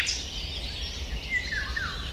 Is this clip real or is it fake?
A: real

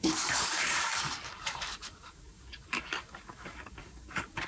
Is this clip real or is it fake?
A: fake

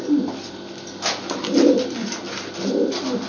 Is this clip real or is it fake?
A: real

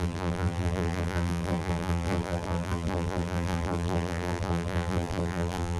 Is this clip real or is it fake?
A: fake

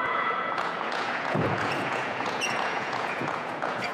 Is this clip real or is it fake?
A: fake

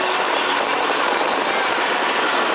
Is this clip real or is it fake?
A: real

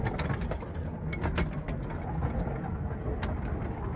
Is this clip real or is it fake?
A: real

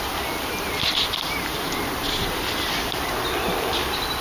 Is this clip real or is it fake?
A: real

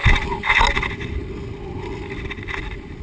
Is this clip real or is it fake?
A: real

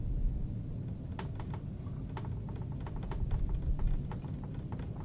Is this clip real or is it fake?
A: real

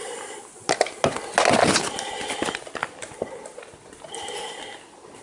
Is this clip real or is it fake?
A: real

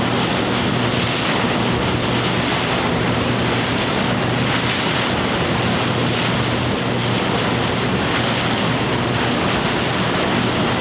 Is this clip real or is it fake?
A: real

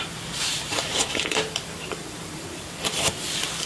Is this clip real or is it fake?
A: fake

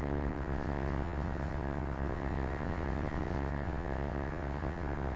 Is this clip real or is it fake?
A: fake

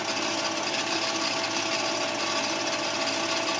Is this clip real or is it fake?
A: real